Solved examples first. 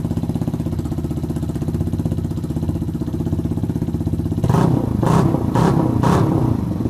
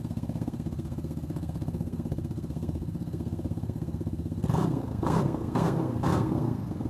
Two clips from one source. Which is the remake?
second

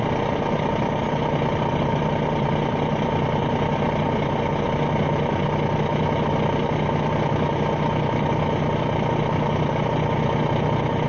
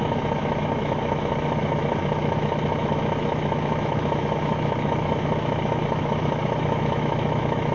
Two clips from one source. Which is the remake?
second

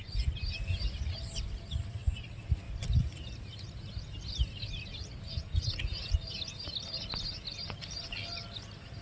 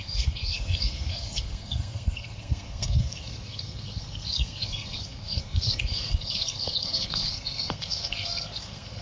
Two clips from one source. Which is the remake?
second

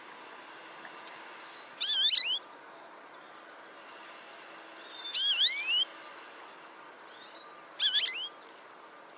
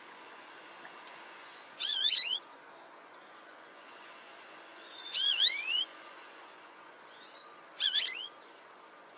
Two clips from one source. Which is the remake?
second